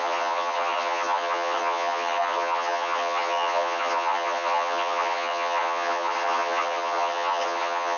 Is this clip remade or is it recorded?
remade